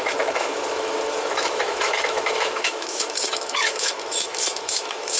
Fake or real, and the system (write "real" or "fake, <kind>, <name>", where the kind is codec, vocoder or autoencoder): fake, autoencoder, DAC-VAE